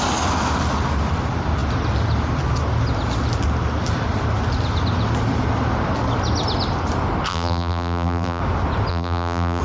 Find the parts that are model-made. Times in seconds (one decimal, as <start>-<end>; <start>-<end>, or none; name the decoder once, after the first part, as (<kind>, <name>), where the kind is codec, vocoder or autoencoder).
7.3-8.4 (vocoder, BigVGAN v2); 8.9-9.6